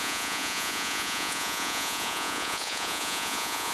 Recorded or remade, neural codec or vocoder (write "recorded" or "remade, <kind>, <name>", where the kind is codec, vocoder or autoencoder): remade, vocoder, Vocos